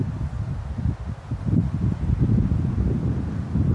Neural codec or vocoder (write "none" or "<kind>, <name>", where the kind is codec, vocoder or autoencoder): none